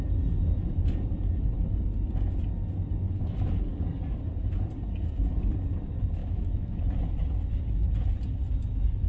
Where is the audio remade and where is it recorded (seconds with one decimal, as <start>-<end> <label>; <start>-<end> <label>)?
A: 0.0-6.2 recorded; 6.2-6.8 remade; 6.8-9.1 recorded